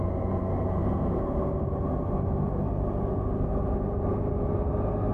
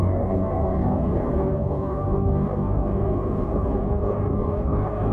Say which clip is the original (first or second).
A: first